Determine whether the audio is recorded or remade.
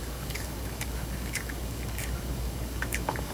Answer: remade